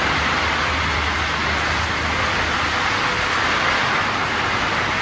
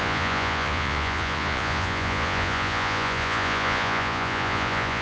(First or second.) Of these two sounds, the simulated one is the second